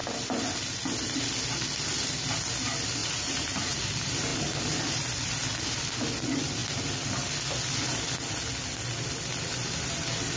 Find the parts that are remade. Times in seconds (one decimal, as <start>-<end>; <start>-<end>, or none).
3.0-3.8